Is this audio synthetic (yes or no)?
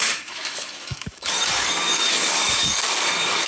yes